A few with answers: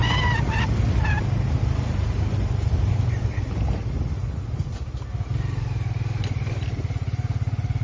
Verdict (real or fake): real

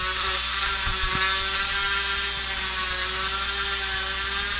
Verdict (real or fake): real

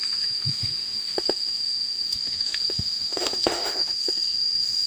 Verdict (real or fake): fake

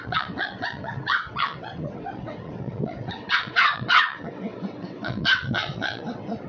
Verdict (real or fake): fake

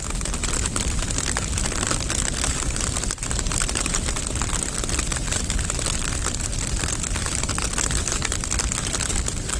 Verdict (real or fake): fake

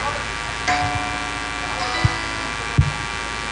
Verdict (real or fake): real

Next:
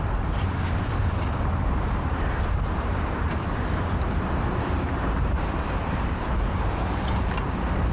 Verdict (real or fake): fake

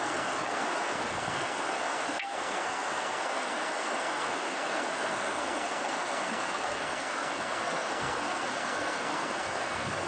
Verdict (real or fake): fake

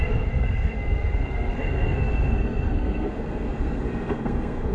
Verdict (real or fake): fake